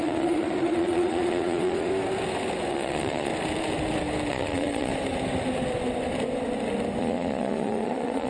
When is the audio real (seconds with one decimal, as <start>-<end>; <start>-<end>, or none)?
1.9-2.7; 3.3-4.3; 4.9-7.0